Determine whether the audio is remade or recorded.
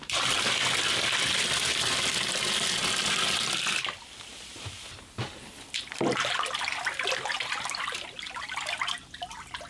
recorded